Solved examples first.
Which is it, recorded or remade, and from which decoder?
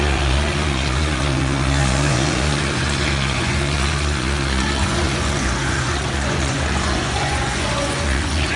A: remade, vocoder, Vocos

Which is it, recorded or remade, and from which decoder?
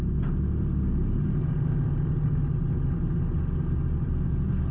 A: recorded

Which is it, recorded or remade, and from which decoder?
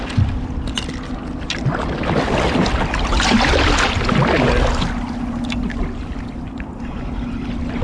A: recorded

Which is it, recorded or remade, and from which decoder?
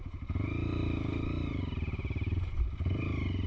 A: remade, vocoder, BigVGAN v2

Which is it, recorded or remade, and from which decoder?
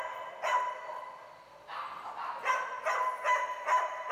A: remade, vocoder, BigVGAN v2